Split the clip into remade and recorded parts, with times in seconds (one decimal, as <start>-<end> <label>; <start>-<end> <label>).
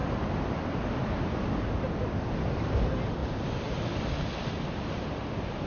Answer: 0.0-3.2 recorded; 3.2-3.8 remade; 3.8-5.7 recorded